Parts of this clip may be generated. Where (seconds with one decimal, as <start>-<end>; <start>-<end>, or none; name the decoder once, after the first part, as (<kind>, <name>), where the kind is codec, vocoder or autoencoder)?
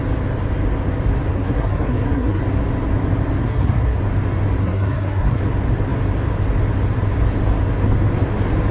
1.3-2.4 (codec, SNAC); 3.4-4.0; 4.6-5.4